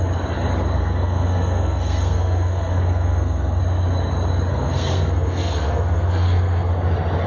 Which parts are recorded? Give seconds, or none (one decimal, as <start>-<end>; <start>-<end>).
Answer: 0.0-0.8; 3.6-4.5; 6.7-7.3